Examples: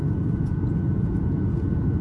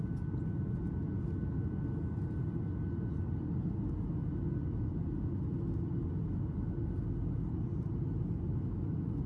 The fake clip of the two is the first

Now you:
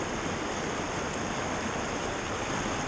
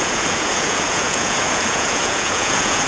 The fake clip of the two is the second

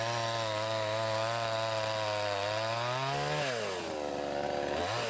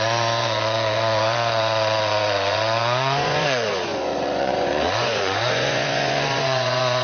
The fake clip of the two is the second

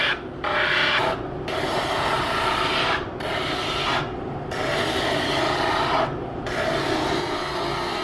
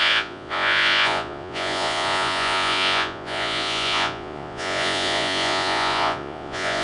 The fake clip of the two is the second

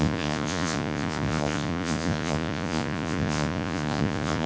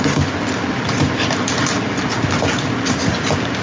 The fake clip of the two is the first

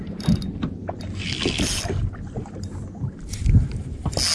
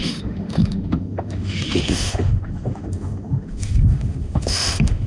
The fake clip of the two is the second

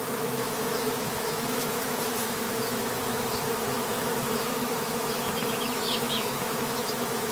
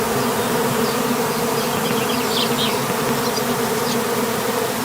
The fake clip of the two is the first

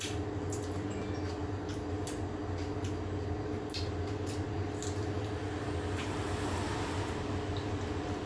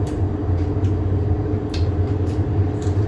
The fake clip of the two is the second